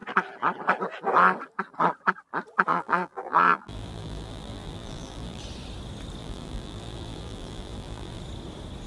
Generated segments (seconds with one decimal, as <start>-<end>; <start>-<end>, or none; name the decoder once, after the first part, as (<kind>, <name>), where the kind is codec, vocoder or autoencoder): 2.7-5.4 (vocoder, BigVGAN v2); 6.2-8.2